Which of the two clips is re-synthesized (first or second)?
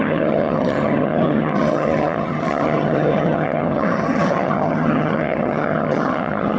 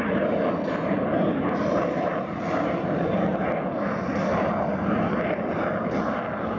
first